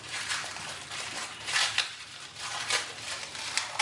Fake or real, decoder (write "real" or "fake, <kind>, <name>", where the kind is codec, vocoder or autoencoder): fake, vocoder, BigVGAN v2